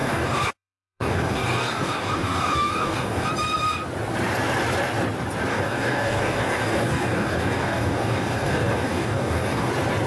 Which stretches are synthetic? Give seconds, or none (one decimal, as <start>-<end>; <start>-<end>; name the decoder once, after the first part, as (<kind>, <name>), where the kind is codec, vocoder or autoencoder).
0.0-3.3 (codec, DAC); 5.5-9.7